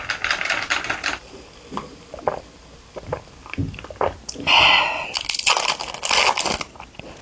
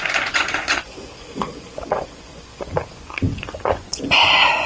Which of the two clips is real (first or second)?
first